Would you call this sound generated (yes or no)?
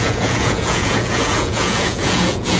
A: yes